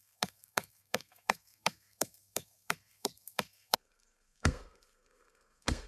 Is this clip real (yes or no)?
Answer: no